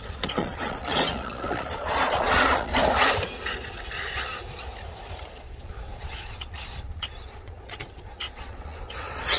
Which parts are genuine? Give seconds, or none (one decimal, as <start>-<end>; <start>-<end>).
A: 2.7-3.9; 4.3-5.3